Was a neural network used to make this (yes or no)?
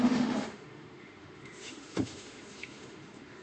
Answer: yes